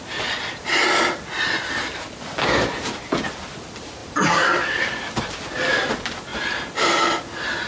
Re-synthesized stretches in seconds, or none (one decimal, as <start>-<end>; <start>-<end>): 4.0-5.2